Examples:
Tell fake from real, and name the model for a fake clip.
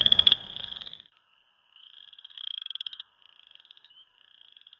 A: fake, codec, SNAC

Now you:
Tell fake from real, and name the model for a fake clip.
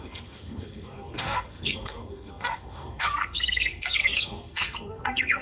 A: fake, codec, SNAC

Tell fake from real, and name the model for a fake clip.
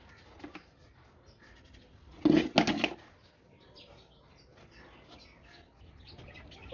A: real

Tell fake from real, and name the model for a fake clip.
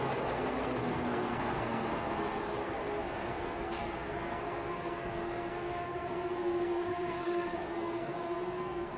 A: fake, codec, SNAC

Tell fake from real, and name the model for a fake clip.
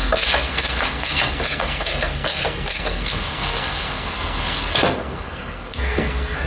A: fake, codec, SNAC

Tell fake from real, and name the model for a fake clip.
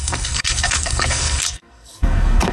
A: fake, codec, SNAC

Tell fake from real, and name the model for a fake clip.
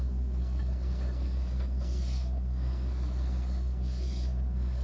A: fake, codec, SNAC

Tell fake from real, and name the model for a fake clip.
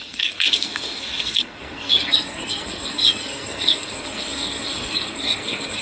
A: fake, codec, SNAC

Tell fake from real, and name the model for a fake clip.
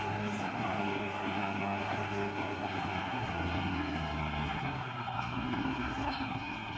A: fake, codec, SNAC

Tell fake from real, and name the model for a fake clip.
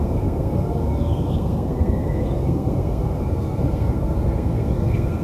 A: fake, codec, SNAC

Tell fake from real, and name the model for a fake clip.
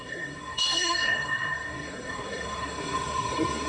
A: fake, codec, SNAC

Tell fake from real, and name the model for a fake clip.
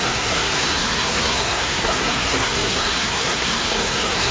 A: fake, codec, SNAC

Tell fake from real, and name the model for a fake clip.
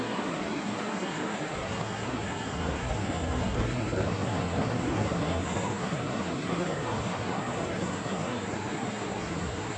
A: fake, codec, SNAC